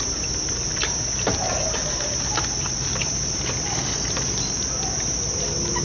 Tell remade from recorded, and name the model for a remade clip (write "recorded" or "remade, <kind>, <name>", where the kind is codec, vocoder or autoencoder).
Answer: recorded